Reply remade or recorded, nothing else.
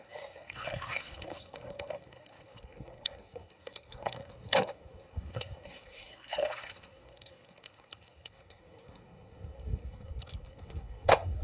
remade